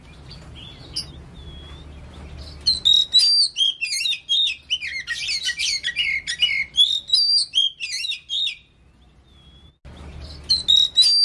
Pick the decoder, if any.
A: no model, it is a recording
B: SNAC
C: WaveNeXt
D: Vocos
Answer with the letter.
A